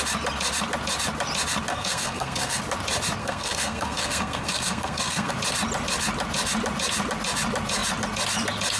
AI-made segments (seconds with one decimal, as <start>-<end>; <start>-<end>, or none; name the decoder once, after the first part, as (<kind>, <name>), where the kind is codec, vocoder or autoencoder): 1.7-2.6 (codec, SNAC); 3.2-5.3

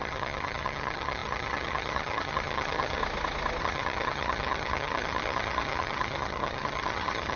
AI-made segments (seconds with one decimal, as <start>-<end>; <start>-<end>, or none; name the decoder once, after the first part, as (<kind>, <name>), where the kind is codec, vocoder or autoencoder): 0.0-3.0 (vocoder, HiFi-GAN); 3.6-7.4

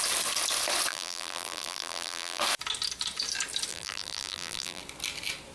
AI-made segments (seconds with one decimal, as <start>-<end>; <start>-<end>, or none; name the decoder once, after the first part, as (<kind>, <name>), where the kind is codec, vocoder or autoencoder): 0.9-2.4 (vocoder, BigVGAN v2); 3.7-4.8

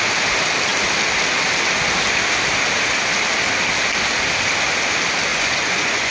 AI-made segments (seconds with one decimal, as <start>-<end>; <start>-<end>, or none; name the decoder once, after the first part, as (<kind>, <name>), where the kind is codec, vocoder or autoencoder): 5.3-6.1 (vocoder, Vocos)